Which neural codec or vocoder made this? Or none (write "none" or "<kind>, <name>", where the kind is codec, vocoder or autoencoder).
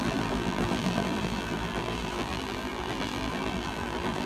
vocoder, BigVGAN v2